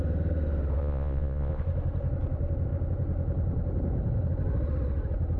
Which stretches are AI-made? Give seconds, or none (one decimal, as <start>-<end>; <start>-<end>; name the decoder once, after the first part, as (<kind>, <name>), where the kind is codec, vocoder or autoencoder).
0.8-1.6 (vocoder, Vocos)